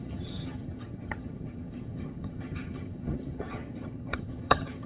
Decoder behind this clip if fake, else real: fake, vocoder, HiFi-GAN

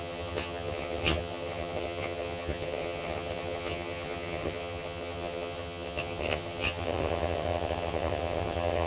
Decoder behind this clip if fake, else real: fake, vocoder, HiFi-GAN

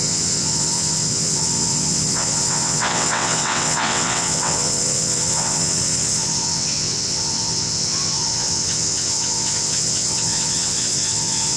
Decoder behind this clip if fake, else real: fake, vocoder, WaveNeXt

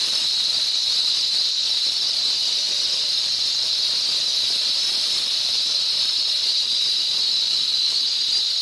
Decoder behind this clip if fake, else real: real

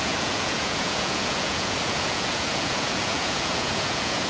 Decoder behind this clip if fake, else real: fake, vocoder, Vocos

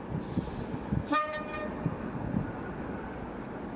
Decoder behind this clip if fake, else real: real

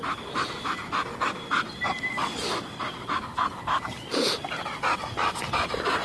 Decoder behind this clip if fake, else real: real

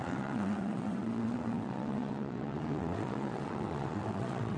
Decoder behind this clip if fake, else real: fake, vocoder, WaveNeXt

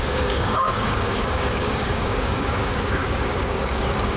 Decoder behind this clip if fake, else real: fake, codec, DAC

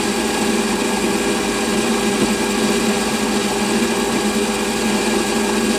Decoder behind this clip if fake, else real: real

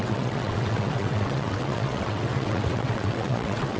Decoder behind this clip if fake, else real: fake, vocoder, WaveNeXt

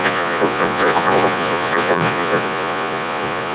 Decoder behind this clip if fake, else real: fake, vocoder, Vocos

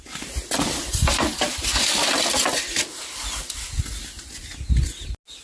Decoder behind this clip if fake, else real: real